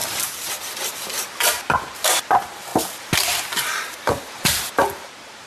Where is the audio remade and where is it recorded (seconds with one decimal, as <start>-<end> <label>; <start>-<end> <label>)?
0.0-2.7 remade; 2.7-3.5 recorded; 3.5-5.5 remade